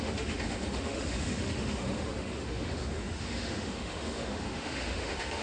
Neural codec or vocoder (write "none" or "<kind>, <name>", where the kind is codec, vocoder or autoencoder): autoencoder, DAC-VAE